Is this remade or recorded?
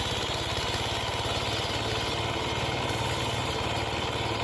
recorded